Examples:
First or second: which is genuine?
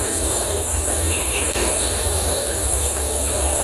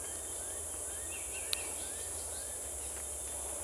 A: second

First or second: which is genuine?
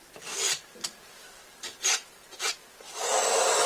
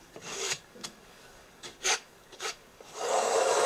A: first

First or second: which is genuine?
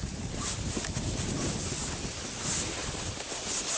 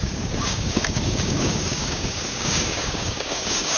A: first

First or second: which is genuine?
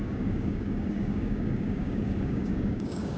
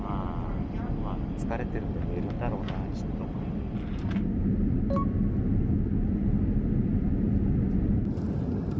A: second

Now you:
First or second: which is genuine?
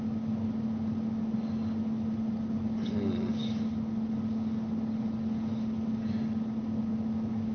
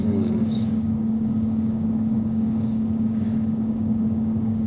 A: first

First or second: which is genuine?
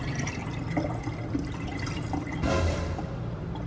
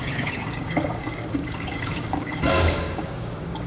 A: first